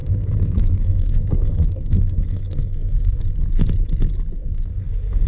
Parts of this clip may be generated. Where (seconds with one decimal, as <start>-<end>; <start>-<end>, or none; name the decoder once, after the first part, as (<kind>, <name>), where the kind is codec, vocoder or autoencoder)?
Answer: 0.0-3.2 (codec, SNAC); 4.4-5.3